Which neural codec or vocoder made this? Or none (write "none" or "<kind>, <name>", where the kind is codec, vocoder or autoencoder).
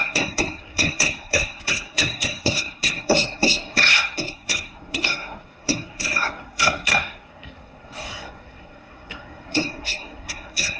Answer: codec, SNAC